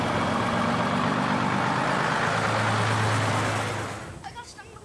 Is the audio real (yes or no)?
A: yes